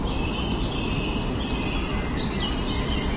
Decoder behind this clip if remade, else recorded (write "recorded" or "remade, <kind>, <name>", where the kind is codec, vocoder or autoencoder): recorded